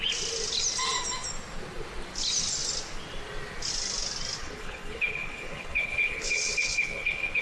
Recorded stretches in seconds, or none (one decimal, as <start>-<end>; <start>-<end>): 0.0-4.4